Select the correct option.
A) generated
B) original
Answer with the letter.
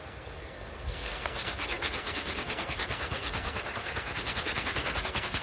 A